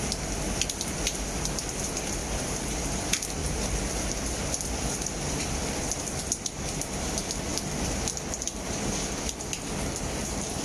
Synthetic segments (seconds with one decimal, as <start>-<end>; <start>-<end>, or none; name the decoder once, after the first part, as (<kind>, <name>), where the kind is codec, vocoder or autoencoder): 2.2-2.9 (vocoder, BigVGAN v2); 3.4-6.2